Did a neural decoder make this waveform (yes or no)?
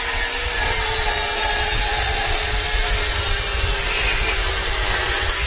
no